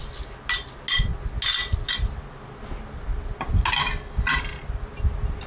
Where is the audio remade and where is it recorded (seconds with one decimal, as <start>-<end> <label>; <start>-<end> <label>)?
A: 0.0-5.5 recorded